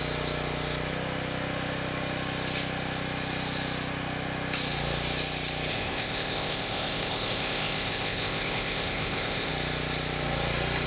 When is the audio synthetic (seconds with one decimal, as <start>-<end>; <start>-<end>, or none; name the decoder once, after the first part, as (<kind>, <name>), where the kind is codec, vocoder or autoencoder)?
5.7-9.5 (codec, ZipCodec)

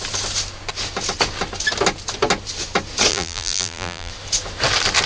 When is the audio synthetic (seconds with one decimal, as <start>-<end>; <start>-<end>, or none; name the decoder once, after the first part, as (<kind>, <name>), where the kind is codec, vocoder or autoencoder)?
3.1-4.1 (vocoder, BigVGAN v2)

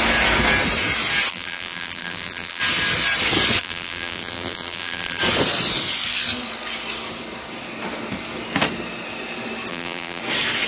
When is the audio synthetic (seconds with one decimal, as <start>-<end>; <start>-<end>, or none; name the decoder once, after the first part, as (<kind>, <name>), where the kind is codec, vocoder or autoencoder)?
1.3-2.6 (vocoder, BigVGAN v2); 3.6-5.2; 9.7-10.2

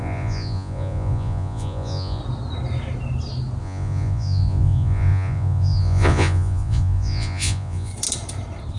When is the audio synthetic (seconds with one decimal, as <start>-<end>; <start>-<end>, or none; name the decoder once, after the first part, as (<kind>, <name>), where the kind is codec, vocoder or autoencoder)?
0.0-2.2 (vocoder, Vocos); 3.6-7.9